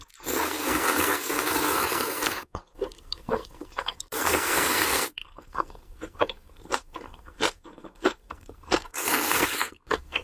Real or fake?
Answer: fake